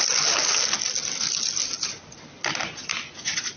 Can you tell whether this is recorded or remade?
recorded